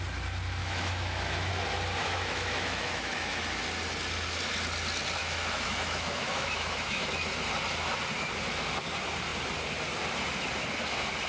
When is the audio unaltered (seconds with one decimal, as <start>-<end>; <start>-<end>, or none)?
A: 0.0-0.6; 1.5-2.0; 3.4-5.2; 7.1-11.3